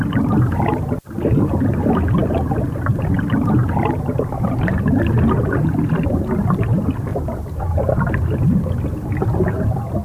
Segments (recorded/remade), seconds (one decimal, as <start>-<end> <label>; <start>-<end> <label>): 0.0-10.0 recorded